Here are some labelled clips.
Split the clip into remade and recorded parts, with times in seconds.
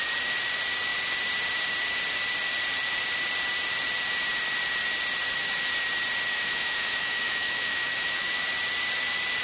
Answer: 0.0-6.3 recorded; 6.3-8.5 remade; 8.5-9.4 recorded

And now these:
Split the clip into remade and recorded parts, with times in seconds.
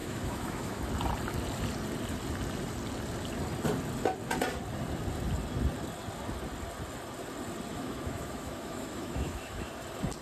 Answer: 0.0-0.8 remade; 0.8-7.7 recorded; 7.7-9.7 remade; 9.7-10.2 recorded